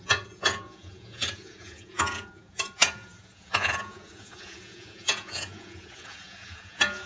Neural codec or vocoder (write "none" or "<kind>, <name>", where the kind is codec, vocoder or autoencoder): vocoder, Vocos